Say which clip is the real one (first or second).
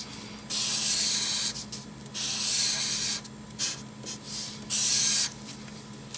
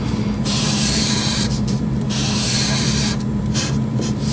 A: first